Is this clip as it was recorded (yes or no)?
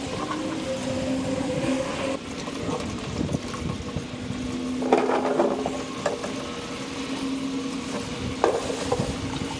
yes